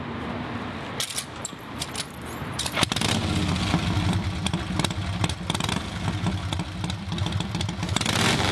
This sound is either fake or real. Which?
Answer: real